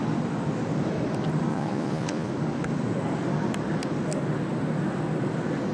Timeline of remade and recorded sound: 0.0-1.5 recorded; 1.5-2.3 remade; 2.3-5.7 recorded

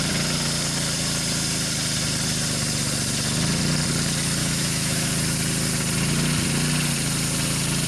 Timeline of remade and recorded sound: 0.0-4.4 recorded; 4.4-5.1 remade; 5.1-7.9 recorded